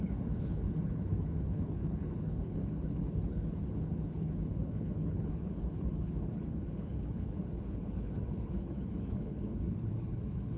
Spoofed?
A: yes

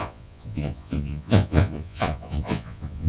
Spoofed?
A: yes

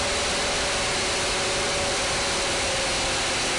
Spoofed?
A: no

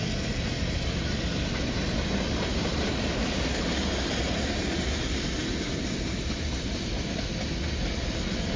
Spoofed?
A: no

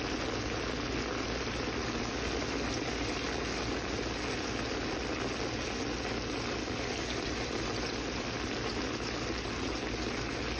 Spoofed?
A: no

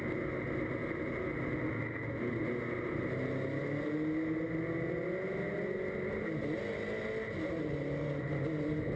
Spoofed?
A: no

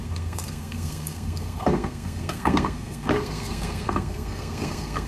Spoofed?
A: yes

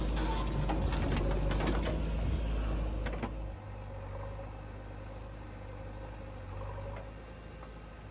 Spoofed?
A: no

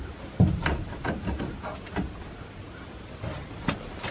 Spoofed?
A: no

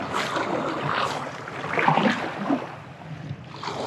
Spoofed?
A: no